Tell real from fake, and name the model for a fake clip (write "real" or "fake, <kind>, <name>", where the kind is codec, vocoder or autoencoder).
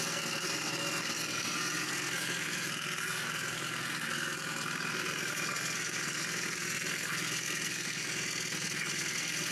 fake, codec, SNAC